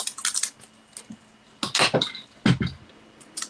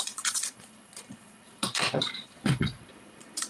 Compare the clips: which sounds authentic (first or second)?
first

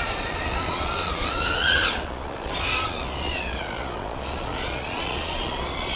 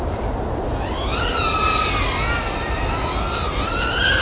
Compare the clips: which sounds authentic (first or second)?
second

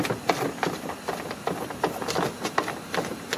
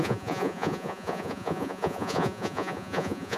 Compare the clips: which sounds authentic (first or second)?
first